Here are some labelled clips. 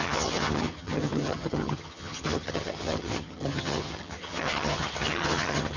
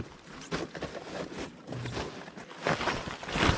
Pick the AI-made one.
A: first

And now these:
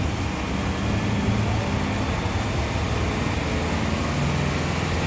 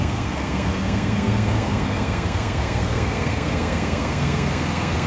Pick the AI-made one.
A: second